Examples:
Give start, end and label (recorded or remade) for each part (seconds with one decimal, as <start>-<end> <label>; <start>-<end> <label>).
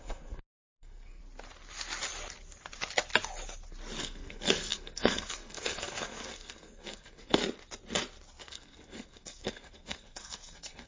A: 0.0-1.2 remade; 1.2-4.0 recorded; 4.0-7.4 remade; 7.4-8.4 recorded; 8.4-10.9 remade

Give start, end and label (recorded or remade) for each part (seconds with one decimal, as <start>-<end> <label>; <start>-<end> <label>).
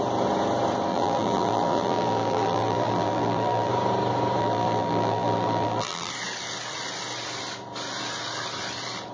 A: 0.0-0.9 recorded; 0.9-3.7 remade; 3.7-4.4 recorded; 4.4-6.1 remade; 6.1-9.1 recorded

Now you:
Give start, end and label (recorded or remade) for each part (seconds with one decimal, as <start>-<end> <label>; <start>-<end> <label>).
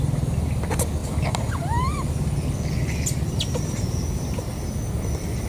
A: 0.0-5.5 recorded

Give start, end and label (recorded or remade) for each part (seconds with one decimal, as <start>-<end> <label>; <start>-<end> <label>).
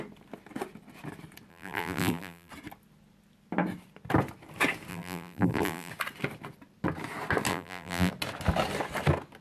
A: 0.0-1.5 recorded; 1.5-2.5 remade; 2.5-4.9 recorded; 4.9-5.9 remade; 5.9-7.5 recorded; 7.5-8.1 remade; 8.1-9.4 recorded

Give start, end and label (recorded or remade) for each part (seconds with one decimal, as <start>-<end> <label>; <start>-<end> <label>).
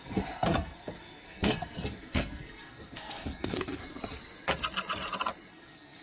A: 0.0-3.8 remade; 3.8-5.5 recorded; 5.5-6.0 remade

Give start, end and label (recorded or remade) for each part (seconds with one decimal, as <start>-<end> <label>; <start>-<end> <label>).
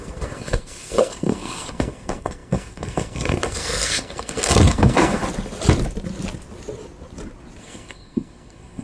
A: 0.0-5.2 remade; 5.2-7.6 recorded; 7.6-8.8 remade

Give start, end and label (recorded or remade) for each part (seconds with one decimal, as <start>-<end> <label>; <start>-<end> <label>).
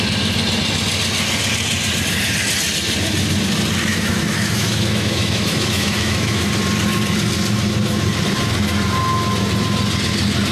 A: 0.0-3.9 recorded; 3.9-6.5 remade; 6.5-10.5 recorded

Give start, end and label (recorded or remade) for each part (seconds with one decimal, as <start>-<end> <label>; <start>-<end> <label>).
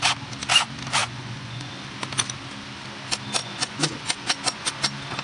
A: 0.0-1.0 recorded; 1.0-1.7 remade; 1.7-3.4 recorded; 3.4-4.7 remade; 4.7-5.2 recorded